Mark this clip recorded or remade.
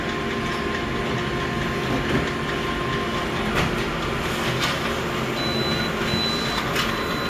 recorded